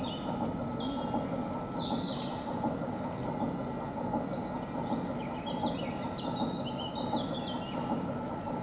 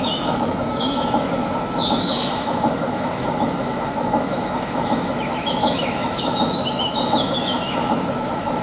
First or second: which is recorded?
first